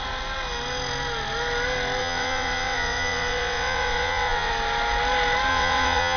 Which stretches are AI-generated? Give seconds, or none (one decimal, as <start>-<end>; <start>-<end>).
2.0-4.5; 5.5-6.2